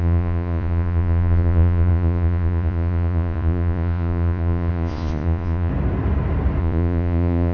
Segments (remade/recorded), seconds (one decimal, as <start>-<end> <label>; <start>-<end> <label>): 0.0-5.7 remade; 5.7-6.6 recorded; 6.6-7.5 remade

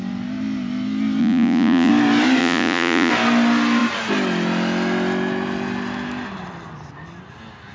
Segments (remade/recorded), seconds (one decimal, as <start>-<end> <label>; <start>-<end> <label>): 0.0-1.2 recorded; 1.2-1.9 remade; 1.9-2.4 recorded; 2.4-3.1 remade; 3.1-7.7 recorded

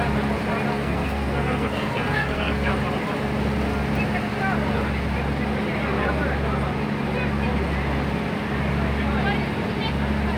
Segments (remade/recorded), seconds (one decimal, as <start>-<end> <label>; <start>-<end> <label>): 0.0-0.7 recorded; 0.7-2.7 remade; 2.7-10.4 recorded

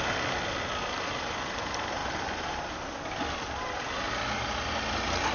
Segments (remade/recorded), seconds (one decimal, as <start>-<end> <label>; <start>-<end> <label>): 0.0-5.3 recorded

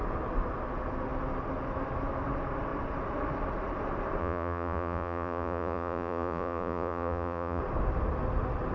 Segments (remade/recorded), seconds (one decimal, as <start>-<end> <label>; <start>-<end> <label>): 0.0-4.2 recorded; 4.2-7.6 remade; 7.6-8.7 recorded

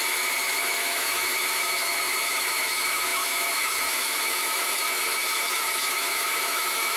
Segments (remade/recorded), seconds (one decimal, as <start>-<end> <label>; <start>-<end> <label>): 0.0-7.0 remade

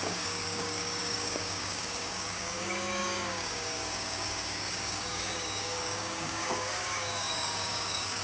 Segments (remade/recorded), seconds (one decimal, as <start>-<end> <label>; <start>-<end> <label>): 0.0-8.2 remade